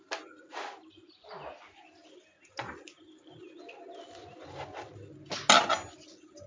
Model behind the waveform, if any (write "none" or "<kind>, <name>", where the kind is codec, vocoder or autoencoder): none